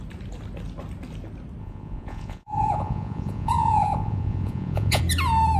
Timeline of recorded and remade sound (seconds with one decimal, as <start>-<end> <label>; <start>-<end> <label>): 0.0-1.6 recorded; 1.6-5.0 remade; 5.0-5.6 recorded